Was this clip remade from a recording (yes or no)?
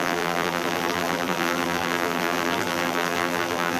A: yes